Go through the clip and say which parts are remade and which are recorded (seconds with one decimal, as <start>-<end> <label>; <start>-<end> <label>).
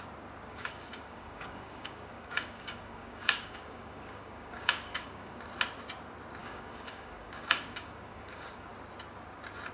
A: 0.0-0.5 recorded; 0.5-5.4 remade; 5.4-6.4 recorded; 6.4-8.7 remade; 8.7-9.7 recorded